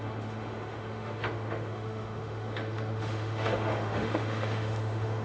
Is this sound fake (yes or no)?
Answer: yes